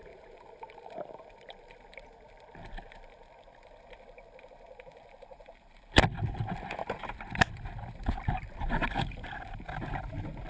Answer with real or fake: fake